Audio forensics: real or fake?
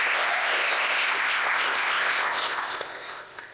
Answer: fake